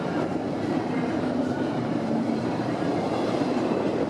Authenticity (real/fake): fake